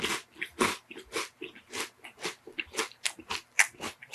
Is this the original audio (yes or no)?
yes